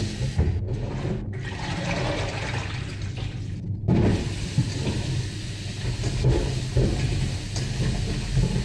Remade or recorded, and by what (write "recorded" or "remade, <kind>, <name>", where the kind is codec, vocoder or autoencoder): recorded